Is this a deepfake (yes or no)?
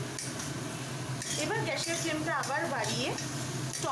no